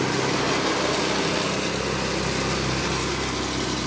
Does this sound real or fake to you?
real